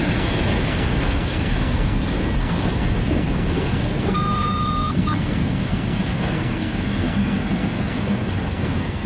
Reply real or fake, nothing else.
fake